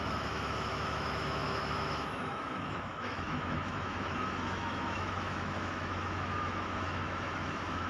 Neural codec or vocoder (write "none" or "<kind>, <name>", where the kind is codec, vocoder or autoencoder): autoencoder, DAC-VAE